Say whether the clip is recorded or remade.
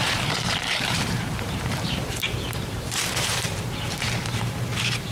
remade